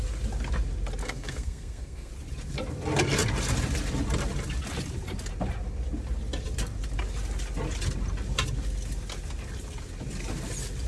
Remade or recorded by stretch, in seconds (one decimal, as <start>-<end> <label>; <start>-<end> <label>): 0.0-1.0 recorded; 1.0-2.1 remade; 2.1-10.9 recorded